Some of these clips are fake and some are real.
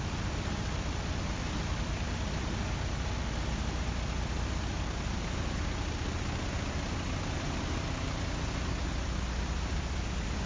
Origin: real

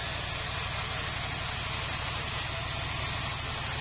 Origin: real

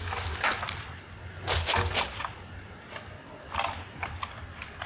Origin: real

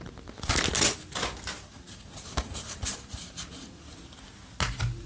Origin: real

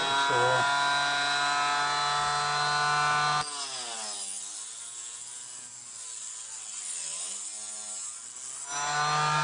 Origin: real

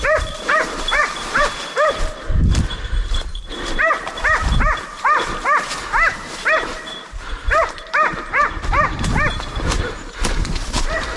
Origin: fake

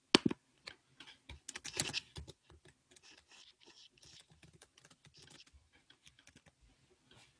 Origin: real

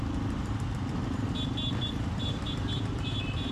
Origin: fake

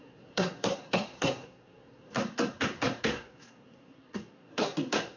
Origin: fake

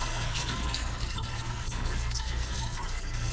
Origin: fake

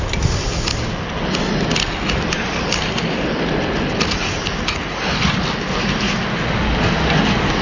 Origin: real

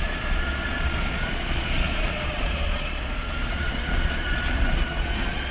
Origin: fake